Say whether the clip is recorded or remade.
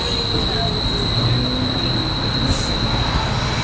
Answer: recorded